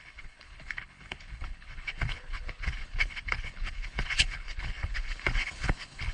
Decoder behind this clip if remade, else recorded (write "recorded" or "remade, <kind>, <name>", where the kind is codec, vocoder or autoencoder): remade, codec, HILCodec